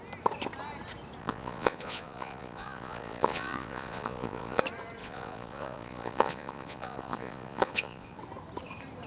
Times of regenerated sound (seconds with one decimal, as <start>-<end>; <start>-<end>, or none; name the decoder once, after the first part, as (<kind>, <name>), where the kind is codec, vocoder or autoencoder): 1.2-4.6 (vocoder, Vocos); 5.0-8.2